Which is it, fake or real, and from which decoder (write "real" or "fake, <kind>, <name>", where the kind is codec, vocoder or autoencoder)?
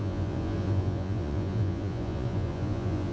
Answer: fake, vocoder, Vocos